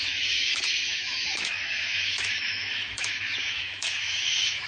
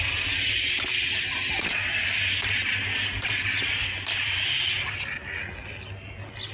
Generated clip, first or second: first